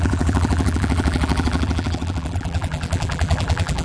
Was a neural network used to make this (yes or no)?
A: yes